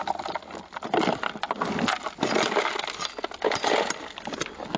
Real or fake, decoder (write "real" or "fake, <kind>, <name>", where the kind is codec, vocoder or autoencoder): real